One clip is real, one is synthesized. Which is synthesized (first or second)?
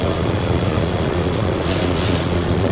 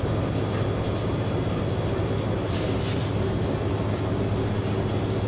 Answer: first